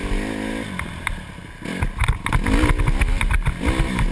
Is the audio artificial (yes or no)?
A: no